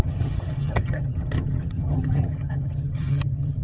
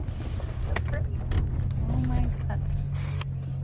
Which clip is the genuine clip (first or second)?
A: second